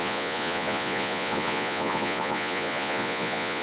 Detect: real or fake fake